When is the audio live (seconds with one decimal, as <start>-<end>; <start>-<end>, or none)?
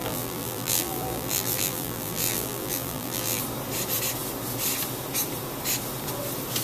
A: 3.4-6.6